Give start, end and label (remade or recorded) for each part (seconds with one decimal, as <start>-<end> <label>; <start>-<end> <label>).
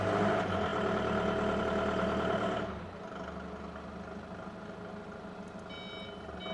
0.0-6.5 recorded